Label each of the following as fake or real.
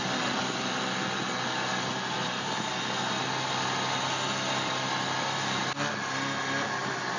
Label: real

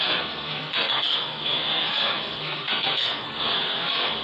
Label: fake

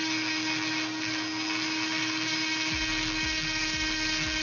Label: real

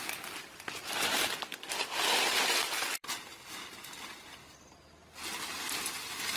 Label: real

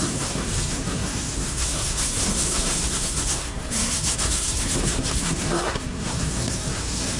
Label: fake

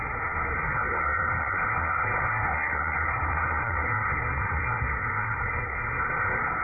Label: fake